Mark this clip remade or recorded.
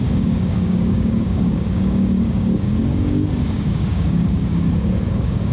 remade